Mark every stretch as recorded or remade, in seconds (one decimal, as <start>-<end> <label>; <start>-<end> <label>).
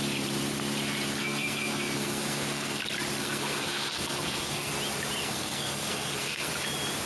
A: 0.0-1.2 recorded; 1.2-2.8 remade; 2.8-3.2 recorded; 3.2-4.7 remade; 4.7-5.2 recorded; 5.2-6.5 remade; 6.5-7.1 recorded